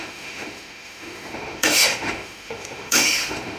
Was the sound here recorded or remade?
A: remade